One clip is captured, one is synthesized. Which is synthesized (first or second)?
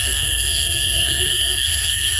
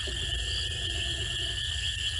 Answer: first